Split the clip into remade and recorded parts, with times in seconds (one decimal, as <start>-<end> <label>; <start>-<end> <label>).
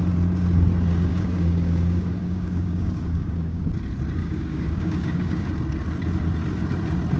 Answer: 0.0-1.1 recorded; 1.1-3.6 remade; 3.6-4.2 recorded; 4.2-5.5 remade; 5.5-7.2 recorded